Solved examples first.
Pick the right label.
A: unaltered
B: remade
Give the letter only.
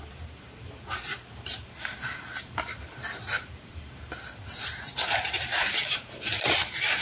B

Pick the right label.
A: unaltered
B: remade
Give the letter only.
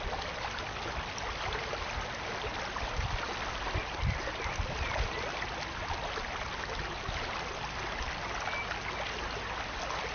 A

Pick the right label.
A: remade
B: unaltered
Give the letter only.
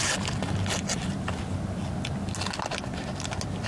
B